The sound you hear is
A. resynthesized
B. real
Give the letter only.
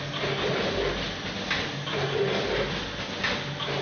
B